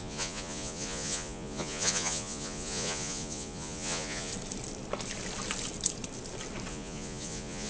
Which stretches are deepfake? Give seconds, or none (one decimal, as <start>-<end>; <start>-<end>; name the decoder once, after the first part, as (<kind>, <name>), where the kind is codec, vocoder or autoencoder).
0.0-4.3 (vocoder, Vocos); 6.7-7.7